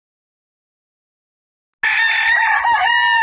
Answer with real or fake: real